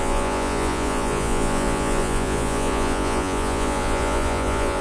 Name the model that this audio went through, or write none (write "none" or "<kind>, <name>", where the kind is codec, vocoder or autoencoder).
vocoder, Vocos